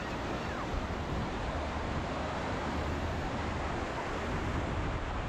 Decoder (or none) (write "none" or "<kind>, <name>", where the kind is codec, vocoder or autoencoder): none